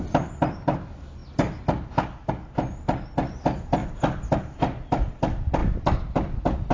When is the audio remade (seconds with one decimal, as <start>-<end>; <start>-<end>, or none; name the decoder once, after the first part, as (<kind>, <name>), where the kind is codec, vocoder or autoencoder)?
none